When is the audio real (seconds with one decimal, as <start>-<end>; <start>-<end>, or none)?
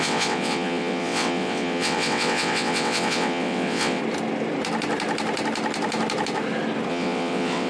4.0-6.9